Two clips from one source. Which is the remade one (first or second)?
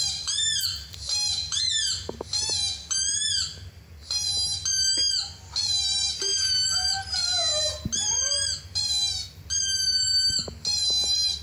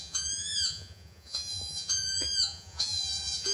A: second